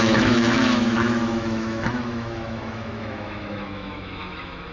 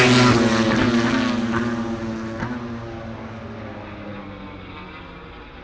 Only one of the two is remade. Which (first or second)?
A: first